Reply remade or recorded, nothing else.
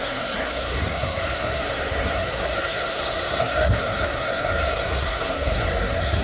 remade